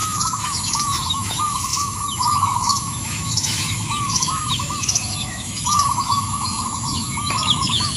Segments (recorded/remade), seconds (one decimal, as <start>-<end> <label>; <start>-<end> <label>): 0.0-8.0 remade